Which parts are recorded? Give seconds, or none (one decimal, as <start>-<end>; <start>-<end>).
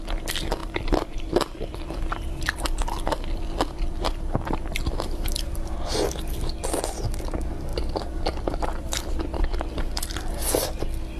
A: 0.0-0.6; 5.7-7.7; 9.2-11.2